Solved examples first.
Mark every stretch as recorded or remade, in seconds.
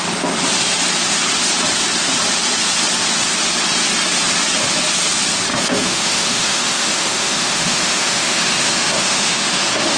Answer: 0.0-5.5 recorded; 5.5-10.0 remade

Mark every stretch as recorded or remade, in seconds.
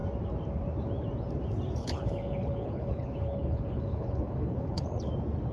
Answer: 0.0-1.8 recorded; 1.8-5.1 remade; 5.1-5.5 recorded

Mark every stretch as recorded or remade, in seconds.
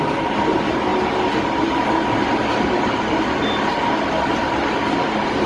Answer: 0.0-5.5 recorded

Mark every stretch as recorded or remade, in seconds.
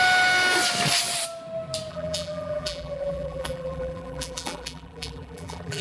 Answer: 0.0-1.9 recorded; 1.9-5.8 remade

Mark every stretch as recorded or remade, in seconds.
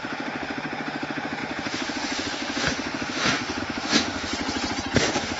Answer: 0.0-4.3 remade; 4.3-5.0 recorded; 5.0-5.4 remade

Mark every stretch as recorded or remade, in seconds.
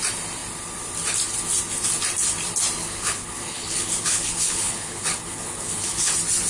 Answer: 0.0-2.8 recorded; 2.8-6.1 remade; 6.1-6.5 recorded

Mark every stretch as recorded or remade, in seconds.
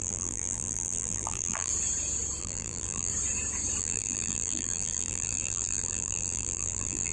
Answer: 0.0-1.7 remade; 1.7-2.4 recorded; 2.4-3.1 remade; 3.1-3.8 recorded; 3.8-7.1 remade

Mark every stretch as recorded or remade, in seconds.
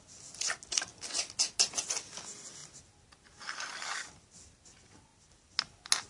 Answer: 0.0-6.1 recorded